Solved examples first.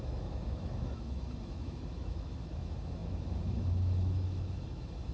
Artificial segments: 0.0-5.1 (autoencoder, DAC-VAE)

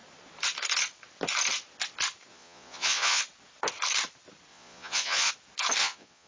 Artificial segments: 2.3-3.2 (vocoder, Vocos); 4.5-5.3; 5.8-6.3